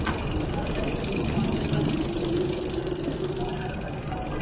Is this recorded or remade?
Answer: recorded